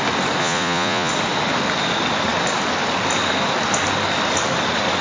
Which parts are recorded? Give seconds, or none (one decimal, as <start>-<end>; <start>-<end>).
0.0-0.4; 1.1-5.0